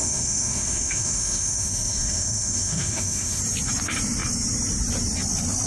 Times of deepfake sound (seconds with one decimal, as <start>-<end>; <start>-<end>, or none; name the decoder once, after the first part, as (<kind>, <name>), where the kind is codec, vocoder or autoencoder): 0.0-3.4 (autoencoder, DAC-VAE)